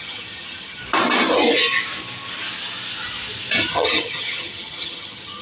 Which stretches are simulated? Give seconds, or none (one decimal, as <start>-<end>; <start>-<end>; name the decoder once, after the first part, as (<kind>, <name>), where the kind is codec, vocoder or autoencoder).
0.0-0.8 (vocoder, HiFi-GAN); 3.7-5.4

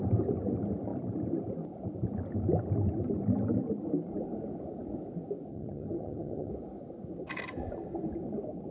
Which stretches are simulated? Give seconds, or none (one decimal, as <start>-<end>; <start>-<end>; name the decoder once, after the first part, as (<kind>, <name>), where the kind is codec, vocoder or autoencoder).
5.5-6.5 (vocoder, HiFi-GAN)

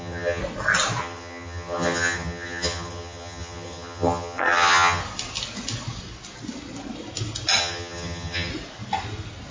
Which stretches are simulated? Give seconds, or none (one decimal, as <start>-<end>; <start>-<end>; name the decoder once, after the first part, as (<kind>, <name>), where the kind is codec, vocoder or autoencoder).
0.0-0.4 (vocoder, HiFi-GAN); 1.0-5.0; 7.6-8.5